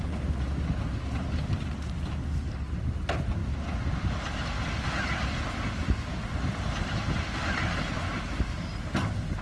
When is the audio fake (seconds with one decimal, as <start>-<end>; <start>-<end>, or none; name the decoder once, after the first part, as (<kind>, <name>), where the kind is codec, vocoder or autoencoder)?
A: none

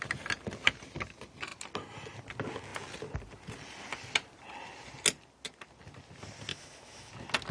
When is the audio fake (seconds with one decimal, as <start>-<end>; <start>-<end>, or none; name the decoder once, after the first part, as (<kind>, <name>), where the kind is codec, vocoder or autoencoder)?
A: 6.5-7.1 (autoencoder, DAC-VAE)

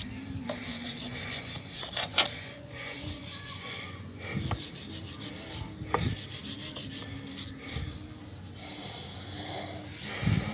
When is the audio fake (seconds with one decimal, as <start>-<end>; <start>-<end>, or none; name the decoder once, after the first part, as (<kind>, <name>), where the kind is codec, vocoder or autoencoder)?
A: 0.7-4.2 (vocoder, Vocos)

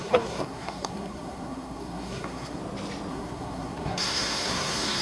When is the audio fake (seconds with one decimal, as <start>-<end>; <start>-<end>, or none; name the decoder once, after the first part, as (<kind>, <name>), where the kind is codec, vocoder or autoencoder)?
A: 0.0-2.6 (codec, SNAC); 3.1-5.0

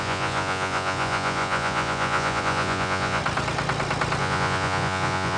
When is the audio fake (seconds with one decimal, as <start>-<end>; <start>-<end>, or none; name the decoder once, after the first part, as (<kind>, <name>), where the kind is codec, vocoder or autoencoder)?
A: 0.0-3.2 (vocoder, Vocos); 4.2-5.4

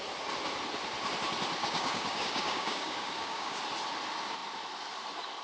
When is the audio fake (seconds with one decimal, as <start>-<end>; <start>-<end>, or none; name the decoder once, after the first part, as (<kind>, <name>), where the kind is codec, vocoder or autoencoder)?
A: 1.6-3.6 (codec, DAC)